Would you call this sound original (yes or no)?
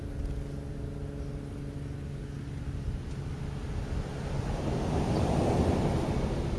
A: yes